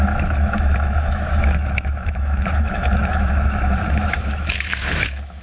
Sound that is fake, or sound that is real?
fake